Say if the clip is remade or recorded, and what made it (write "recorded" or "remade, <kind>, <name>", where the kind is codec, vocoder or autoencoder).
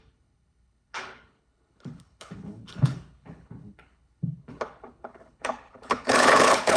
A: remade, codec, HILCodec